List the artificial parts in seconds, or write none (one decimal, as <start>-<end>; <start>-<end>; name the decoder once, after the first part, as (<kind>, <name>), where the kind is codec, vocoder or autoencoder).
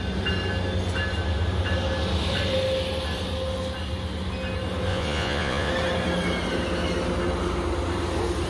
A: 4.9-5.7 (vocoder, Vocos)